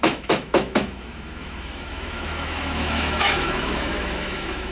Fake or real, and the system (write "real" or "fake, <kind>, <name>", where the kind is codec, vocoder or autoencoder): fake, autoencoder, DAC-VAE